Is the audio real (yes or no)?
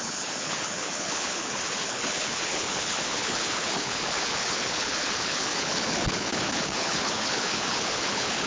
no